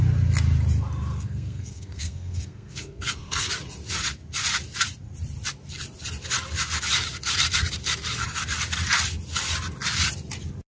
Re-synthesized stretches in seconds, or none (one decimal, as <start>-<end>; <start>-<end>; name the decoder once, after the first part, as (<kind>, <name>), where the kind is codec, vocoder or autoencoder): 1.1-3.5 (codec, SNAC)